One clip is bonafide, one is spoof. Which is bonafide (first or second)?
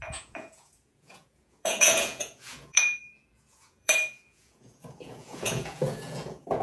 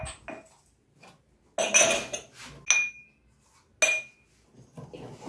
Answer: second